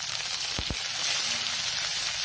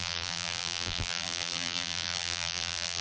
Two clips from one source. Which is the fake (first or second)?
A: second